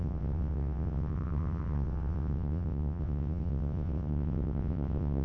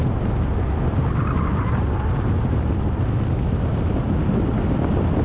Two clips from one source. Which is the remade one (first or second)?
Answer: first